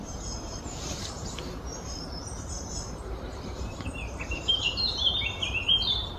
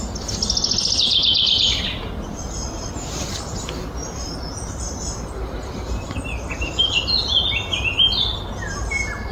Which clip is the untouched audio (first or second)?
second